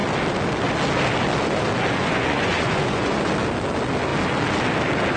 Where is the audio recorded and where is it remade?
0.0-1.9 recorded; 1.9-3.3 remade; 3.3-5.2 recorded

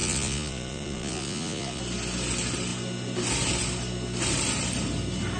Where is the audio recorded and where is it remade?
0.0-1.8 remade; 1.8-5.4 recorded

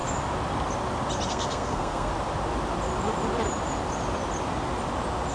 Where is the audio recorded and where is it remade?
0.0-1.3 recorded; 1.3-2.1 remade; 2.1-5.3 recorded

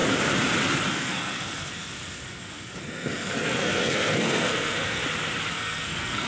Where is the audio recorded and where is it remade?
0.0-0.9 recorded; 0.9-5.0 remade; 5.0-5.5 recorded; 5.5-6.3 remade

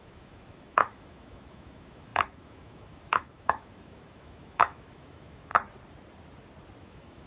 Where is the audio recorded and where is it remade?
0.0-5.5 remade; 5.5-6.8 recorded; 6.8-7.3 remade

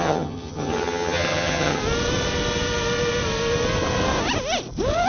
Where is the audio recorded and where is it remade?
0.0-1.8 remade; 1.8-5.1 recorded

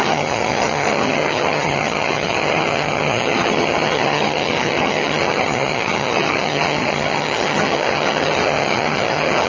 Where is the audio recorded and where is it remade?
0.0-9.5 remade

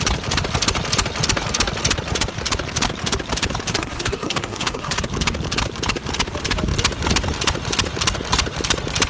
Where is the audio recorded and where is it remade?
0.0-3.7 recorded; 3.7-5.0 remade; 5.0-9.1 recorded